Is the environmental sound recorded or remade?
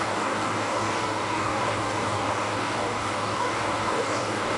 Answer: remade